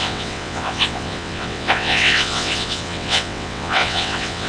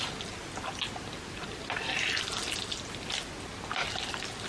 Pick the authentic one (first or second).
second